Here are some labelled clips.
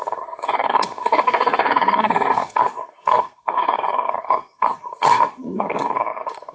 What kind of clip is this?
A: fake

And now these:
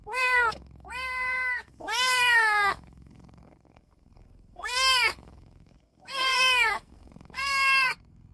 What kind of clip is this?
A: fake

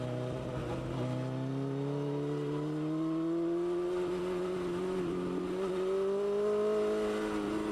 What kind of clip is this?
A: real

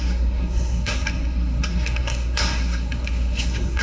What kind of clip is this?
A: fake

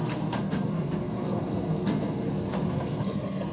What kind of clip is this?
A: fake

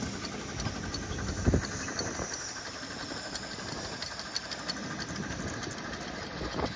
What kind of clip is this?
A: real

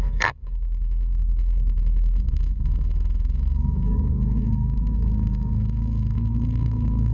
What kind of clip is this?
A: fake